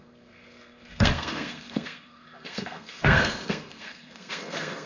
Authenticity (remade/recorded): remade